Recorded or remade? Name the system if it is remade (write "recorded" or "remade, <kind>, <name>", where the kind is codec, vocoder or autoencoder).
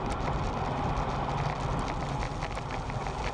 recorded